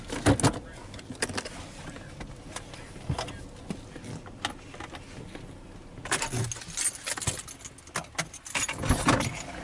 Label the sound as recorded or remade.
recorded